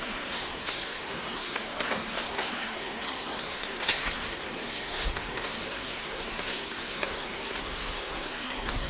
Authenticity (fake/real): fake